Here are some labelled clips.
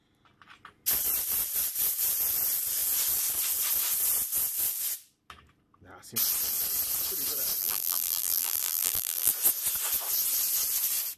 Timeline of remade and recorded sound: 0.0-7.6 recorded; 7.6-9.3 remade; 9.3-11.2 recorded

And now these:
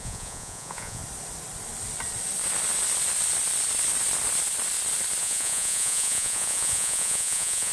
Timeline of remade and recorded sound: 0.0-1.0 remade; 1.0-5.2 recorded; 5.2-7.7 remade

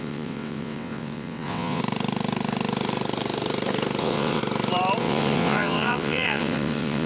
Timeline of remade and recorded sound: 0.0-1.8 remade; 1.8-4.0 recorded; 4.0-4.4 remade; 4.4-5.0 recorded; 5.0-7.1 remade

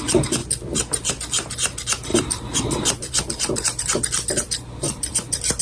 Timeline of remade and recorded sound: 0.0-0.4 recorded; 0.4-1.1 remade; 1.1-2.1 recorded; 2.1-5.6 remade

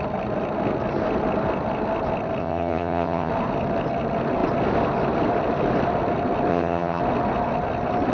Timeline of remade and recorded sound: 0.0-2.4 recorded; 2.4-3.3 remade; 3.3-6.5 recorded; 6.5-7.0 remade; 7.0-8.1 recorded